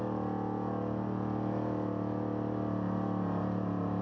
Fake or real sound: real